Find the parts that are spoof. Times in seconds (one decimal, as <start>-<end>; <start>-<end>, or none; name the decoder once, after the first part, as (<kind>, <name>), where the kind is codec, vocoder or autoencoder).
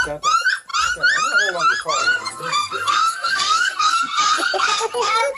2.0-5.4 (codec, SNAC)